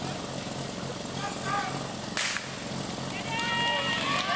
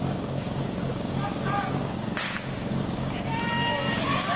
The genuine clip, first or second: first